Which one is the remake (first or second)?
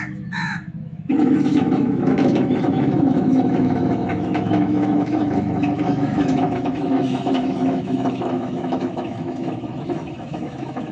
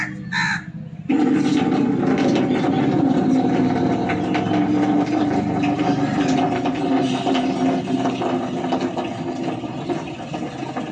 first